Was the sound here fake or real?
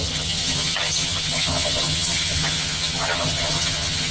fake